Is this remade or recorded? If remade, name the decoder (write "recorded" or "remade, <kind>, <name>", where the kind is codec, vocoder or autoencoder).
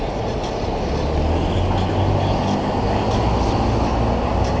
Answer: recorded